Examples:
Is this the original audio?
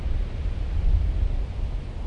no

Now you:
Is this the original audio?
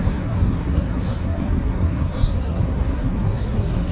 no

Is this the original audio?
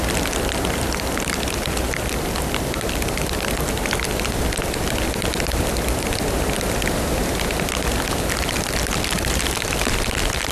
yes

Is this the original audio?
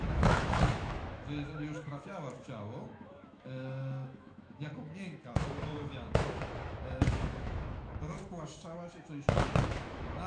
no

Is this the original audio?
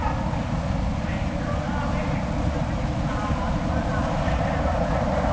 no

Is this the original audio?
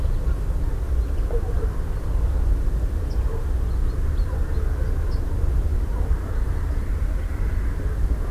yes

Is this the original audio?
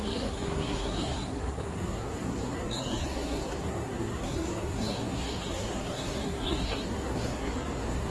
no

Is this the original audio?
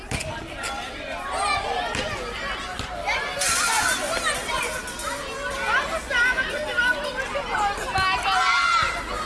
yes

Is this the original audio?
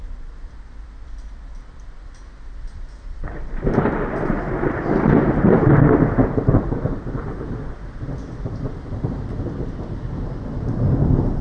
no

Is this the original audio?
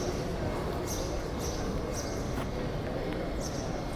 yes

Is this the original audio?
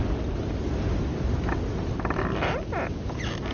yes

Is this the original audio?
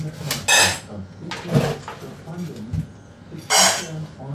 yes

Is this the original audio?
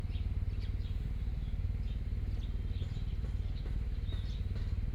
yes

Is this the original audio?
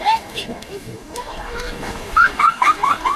no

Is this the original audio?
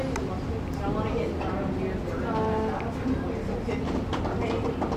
yes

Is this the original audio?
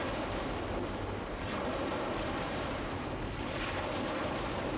yes